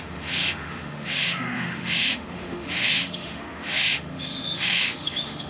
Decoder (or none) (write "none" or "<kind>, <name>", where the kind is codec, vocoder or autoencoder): autoencoder, DAC-VAE